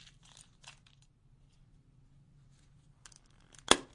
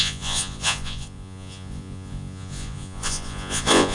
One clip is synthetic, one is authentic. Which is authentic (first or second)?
first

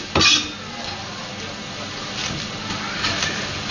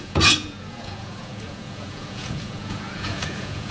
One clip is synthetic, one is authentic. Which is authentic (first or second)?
first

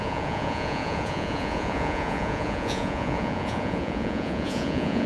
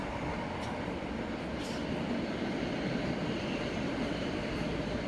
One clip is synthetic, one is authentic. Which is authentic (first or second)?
second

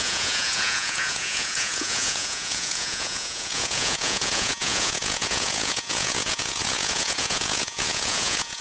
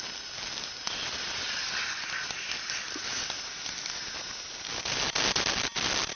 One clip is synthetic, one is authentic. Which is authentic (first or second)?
second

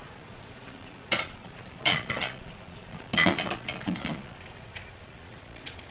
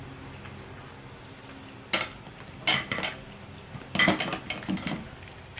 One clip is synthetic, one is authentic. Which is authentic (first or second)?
second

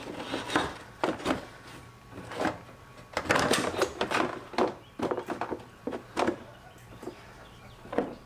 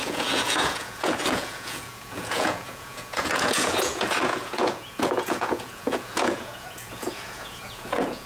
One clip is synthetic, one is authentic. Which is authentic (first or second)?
first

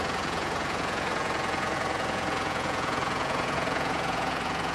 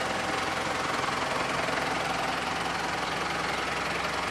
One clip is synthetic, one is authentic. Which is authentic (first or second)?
second